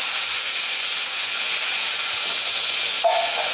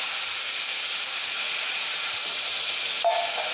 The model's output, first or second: first